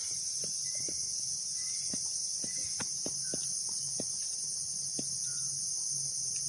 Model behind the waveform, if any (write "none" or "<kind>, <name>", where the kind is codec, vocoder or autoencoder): none